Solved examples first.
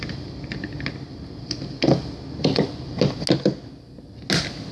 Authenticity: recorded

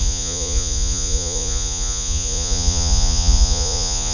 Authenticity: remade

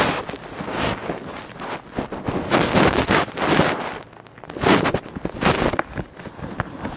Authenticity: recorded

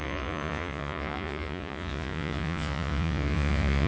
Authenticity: remade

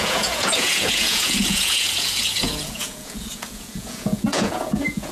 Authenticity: remade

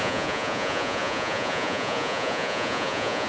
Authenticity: remade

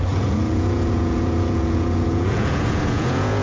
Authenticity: remade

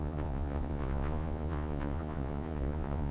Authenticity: remade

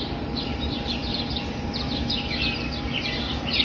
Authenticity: recorded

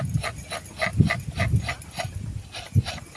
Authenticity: recorded